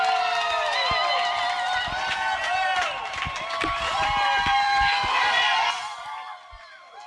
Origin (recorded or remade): remade